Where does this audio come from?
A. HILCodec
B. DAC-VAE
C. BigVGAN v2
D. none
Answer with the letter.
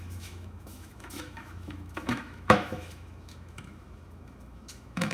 B